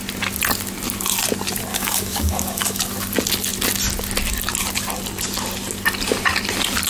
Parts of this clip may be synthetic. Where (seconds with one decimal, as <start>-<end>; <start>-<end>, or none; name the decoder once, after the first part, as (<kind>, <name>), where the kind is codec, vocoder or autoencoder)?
1.7-2.8 (codec, DAC)